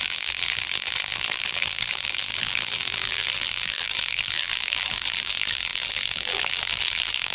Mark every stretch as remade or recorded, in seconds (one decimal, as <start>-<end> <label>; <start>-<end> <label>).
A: 0.0-7.3 remade

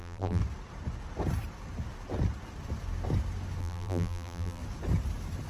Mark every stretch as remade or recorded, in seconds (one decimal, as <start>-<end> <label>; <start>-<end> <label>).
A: 0.0-0.4 remade; 0.4-3.6 recorded; 3.6-4.6 remade; 4.6-5.5 recorded

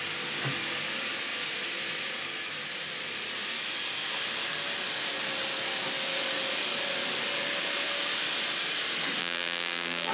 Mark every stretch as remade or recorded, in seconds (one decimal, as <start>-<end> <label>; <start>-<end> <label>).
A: 0.0-9.2 recorded; 9.2-10.1 remade

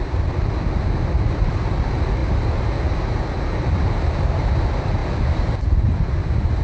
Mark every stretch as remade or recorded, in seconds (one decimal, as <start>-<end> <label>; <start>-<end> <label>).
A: 0.0-6.6 recorded

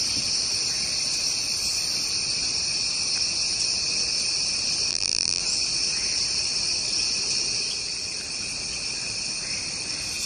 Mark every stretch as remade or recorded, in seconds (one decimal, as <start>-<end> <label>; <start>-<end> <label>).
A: 0.0-4.9 recorded; 4.9-5.4 remade; 5.4-10.3 recorded

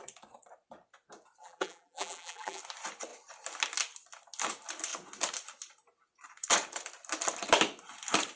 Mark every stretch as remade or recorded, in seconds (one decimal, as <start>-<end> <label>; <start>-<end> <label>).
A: 0.0-1.4 recorded; 1.4-2.6 remade; 2.6-8.4 recorded

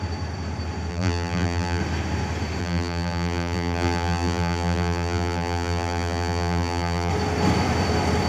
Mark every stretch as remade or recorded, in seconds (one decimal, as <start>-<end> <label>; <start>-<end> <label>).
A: 0.0-0.9 recorded; 0.9-1.8 remade; 1.8-2.6 recorded; 2.6-7.1 remade; 7.1-8.3 recorded